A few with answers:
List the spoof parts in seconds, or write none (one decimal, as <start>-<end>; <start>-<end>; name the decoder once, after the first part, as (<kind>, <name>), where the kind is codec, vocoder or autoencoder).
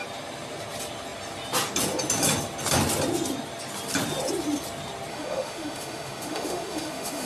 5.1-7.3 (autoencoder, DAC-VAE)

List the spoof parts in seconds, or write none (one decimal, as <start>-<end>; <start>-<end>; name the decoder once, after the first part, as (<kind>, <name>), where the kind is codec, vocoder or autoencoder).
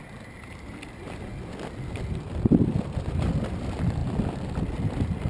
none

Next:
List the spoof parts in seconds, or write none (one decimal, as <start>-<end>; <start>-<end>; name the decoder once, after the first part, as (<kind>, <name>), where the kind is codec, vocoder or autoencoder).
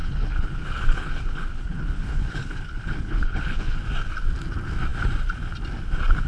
0.0-3.8 (codec, HILCodec)